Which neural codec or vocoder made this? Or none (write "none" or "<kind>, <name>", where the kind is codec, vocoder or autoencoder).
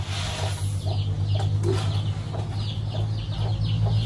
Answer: none